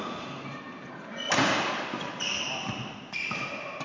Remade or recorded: recorded